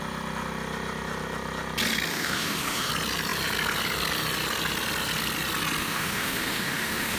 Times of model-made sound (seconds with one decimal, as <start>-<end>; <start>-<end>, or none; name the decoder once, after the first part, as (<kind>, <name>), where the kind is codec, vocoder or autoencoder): 2.1-2.9 (autoencoder, DAC-VAE); 5.8-7.2